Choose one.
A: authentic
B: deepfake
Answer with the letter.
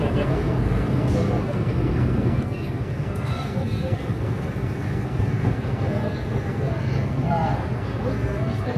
B